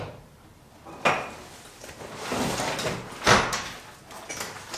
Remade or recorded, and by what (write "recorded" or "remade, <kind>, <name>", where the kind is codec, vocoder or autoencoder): recorded